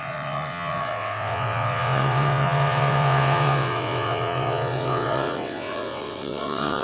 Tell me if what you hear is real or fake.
fake